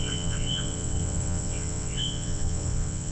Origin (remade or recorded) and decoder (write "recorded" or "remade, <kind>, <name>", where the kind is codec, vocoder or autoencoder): remade, vocoder, WaveNeXt